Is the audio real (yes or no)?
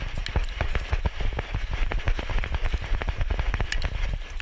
yes